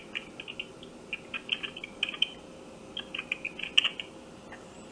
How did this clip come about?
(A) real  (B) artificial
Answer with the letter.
A